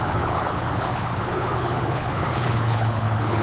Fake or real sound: fake